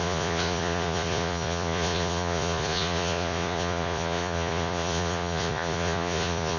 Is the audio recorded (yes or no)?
no